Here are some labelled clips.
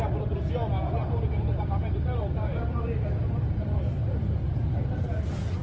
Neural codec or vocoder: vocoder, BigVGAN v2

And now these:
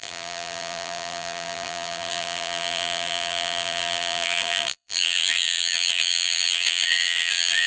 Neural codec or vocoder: vocoder, BigVGAN v2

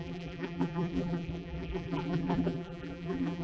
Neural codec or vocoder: vocoder, BigVGAN v2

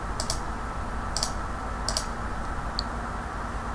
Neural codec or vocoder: none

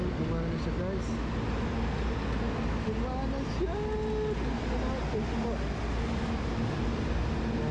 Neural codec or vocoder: none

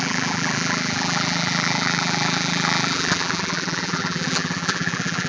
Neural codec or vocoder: vocoder, BigVGAN v2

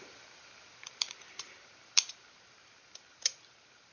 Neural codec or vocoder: vocoder, BigVGAN v2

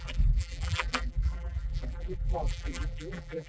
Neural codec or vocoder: vocoder, BigVGAN v2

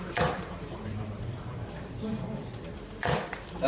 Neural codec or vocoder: vocoder, BigVGAN v2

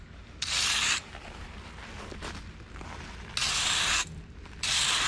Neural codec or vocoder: none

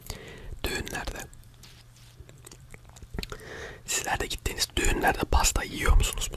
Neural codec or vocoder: vocoder, BigVGAN v2